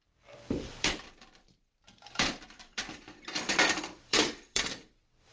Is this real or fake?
fake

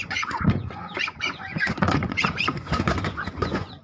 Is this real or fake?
fake